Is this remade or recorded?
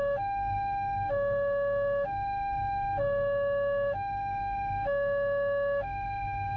remade